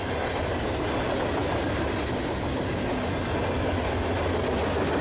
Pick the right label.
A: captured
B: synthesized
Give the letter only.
A